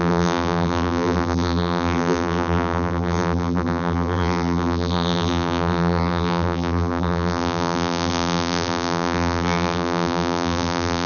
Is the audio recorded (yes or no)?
no